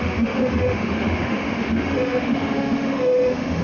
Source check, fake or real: fake